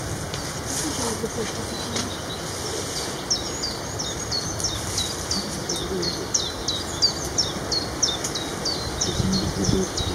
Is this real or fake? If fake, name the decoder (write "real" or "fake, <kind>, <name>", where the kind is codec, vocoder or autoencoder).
real